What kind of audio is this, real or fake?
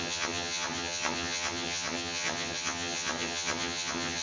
fake